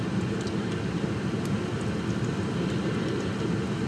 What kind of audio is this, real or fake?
real